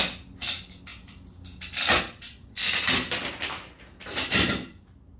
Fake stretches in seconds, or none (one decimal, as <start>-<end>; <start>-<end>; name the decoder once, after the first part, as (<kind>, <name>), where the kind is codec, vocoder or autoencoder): none